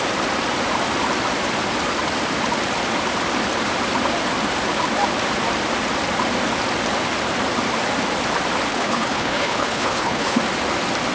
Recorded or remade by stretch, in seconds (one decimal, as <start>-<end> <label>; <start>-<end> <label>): 0.0-8.7 recorded; 8.7-10.4 remade; 10.4-11.1 recorded